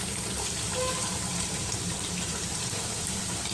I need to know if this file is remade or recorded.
remade